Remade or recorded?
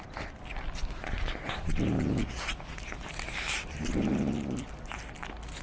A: recorded